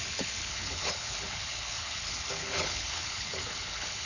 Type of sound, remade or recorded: remade